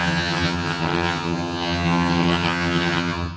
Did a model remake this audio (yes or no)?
yes